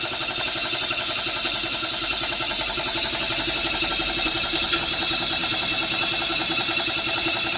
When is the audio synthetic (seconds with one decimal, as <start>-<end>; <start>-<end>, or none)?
0.0-7.6